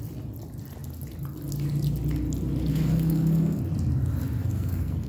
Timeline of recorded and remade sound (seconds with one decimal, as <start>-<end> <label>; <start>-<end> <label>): 0.0-2.7 recorded; 2.7-3.6 remade; 3.6-4.4 recorded; 4.4-5.1 remade